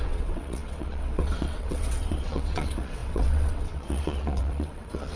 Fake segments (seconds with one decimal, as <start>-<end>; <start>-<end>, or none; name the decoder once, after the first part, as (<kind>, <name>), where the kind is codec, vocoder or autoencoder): 0.0-5.2 (vocoder, WaveNeXt)